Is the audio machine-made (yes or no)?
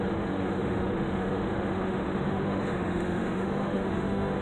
yes